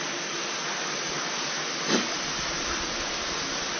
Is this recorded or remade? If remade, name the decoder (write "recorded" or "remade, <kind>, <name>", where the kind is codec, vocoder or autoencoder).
recorded